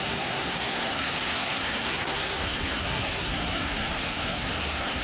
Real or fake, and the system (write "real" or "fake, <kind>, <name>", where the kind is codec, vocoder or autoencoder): fake, codec, SNAC